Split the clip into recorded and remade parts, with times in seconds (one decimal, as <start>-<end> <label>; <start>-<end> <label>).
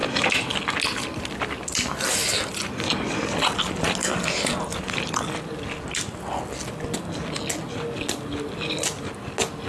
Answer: 0.0-9.7 recorded